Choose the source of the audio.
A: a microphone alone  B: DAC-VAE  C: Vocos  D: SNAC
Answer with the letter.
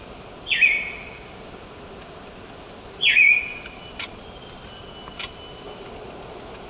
A